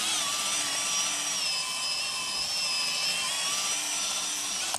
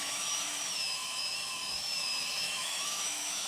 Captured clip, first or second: first